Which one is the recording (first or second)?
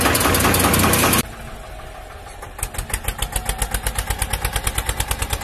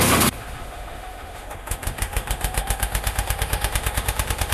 first